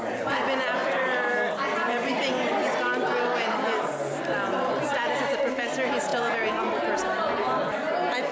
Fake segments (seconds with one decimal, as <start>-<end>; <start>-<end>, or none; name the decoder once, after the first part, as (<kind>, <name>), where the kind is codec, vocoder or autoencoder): none